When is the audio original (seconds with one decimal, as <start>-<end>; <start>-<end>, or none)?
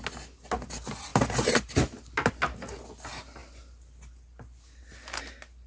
0.0-5.7